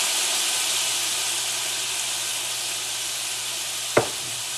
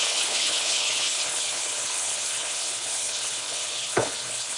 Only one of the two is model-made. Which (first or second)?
second